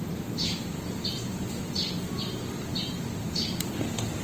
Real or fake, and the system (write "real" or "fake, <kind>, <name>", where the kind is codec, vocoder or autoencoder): real